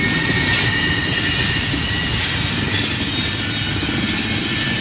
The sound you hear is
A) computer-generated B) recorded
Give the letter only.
B